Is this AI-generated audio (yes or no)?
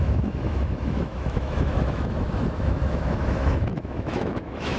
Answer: yes